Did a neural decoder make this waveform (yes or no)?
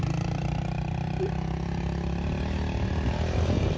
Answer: no